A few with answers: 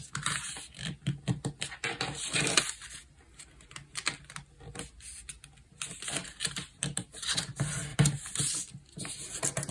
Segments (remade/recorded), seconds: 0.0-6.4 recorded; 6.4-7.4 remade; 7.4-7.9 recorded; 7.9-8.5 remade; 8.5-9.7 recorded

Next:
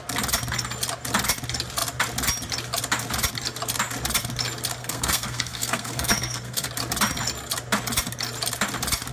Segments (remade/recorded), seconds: 0.0-4.8 recorded; 4.8-6.7 remade; 6.7-9.1 recorded

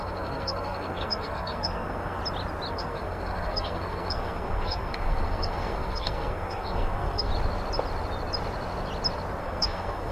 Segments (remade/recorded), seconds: 0.0-2.2 remade; 2.2-2.7 recorded; 2.7-7.3 remade; 7.3-9.4 recorded; 9.4-10.1 remade